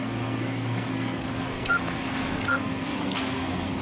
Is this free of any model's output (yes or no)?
no